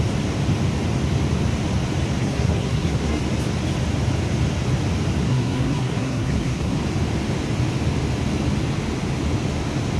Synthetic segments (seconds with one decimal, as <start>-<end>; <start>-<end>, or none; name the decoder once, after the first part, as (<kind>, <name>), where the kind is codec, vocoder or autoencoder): 2.2-3.2 (codec, SNAC); 5.2-6.8